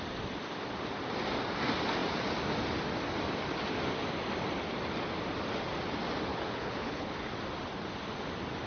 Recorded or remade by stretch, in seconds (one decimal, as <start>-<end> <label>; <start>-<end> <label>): 0.0-6.3 recorded; 6.3-7.2 remade; 7.2-8.7 recorded

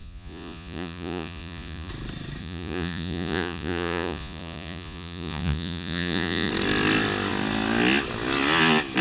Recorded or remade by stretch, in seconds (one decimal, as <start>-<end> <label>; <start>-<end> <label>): 0.0-1.9 remade; 1.9-2.4 recorded; 2.4-6.5 remade; 6.5-9.0 recorded

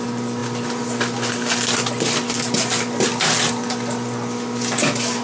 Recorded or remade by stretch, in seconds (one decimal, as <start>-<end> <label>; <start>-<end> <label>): 0.0-5.2 recorded

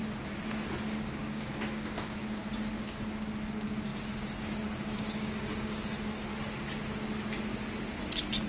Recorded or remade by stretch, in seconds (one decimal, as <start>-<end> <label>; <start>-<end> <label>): 0.0-0.8 recorded; 0.8-2.4 remade; 2.4-2.9 recorded; 2.9-6.3 remade; 6.3-8.5 recorded

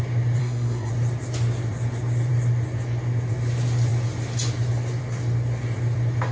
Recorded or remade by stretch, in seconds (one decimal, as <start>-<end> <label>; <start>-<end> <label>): 0.0-0.4 recorded; 0.4-0.9 remade; 0.9-6.3 recorded

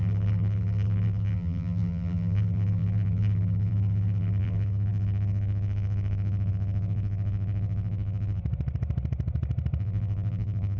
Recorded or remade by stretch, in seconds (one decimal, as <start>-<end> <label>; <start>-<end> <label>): 0.0-8.4 remade; 8.4-9.8 recorded; 9.8-10.8 remade